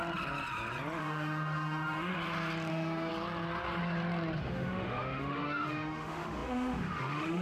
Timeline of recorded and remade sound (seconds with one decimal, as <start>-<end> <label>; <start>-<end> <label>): 0.0-1.0 recorded; 1.0-2.1 remade; 2.1-2.7 recorded; 2.7-3.1 remade; 3.1-4.4 recorded; 4.4-7.4 remade